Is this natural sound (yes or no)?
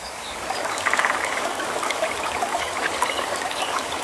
no